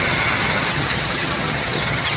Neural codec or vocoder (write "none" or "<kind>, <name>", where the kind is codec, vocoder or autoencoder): vocoder, HiFi-GAN